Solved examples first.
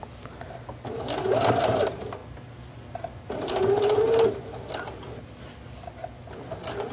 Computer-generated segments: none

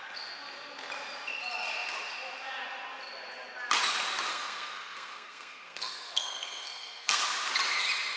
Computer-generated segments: 4.3-7.2 (codec, SNAC)

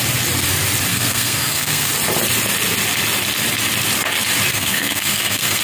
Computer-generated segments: 0.9-1.9 (codec, SNAC); 4.5-5.6